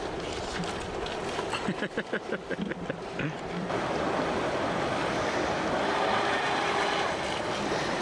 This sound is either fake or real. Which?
real